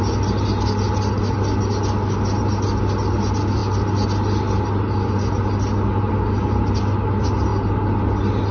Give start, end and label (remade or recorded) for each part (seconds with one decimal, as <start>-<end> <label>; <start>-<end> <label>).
0.0-8.5 recorded